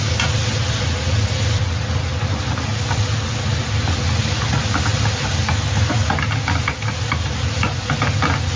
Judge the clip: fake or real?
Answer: real